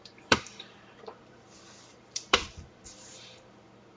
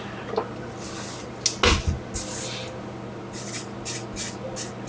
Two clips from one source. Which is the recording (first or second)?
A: second